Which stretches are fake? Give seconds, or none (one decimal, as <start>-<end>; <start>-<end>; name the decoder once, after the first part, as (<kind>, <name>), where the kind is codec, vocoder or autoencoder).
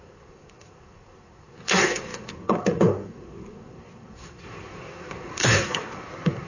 0.0-6.5 (codec, SNAC)